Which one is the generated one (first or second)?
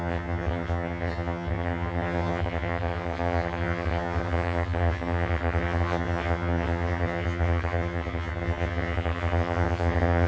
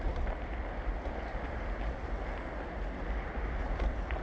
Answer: first